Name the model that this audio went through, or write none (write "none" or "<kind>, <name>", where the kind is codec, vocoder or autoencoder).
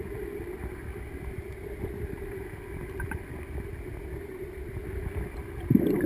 none